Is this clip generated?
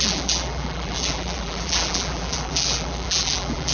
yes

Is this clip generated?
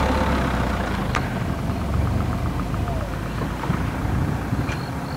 yes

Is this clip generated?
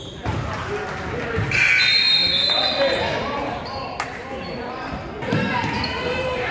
no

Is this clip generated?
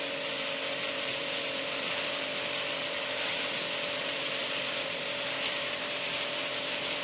yes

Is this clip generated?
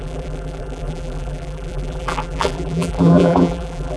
yes